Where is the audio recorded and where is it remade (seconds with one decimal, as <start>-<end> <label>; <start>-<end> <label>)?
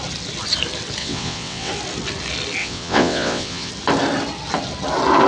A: 0.0-1.0 recorded; 1.0-1.7 remade; 1.7-2.6 recorded; 2.6-3.7 remade; 3.7-5.3 recorded